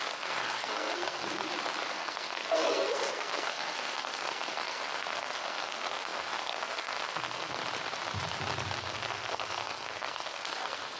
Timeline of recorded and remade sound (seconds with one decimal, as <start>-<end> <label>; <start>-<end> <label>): 0.0-1.4 remade; 1.4-1.9 recorded; 1.9-7.6 remade; 7.6-8.8 recorded; 8.8-11.0 remade